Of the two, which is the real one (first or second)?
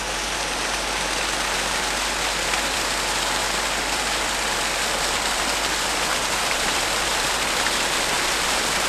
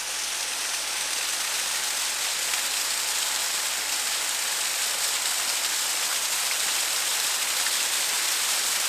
second